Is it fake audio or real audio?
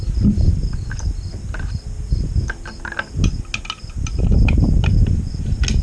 real